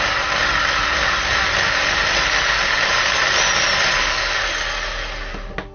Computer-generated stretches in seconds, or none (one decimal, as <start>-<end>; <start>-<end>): none